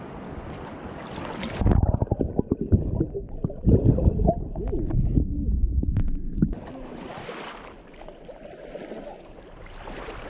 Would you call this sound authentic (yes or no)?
yes